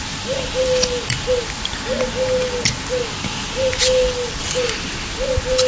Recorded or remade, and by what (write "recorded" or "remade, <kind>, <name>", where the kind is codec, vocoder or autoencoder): recorded